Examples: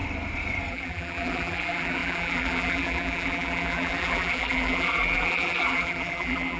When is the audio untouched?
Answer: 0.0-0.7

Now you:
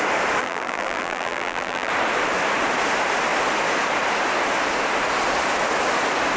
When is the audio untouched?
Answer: 0.0-0.4; 1.9-6.4

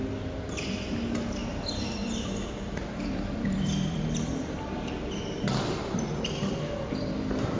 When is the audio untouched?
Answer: 0.0-1.4; 6.0-7.6

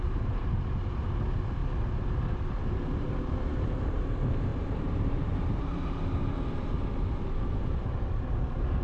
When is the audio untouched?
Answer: 1.6-2.3